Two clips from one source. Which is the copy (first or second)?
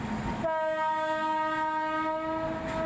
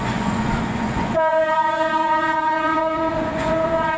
second